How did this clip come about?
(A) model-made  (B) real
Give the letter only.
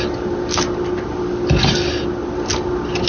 B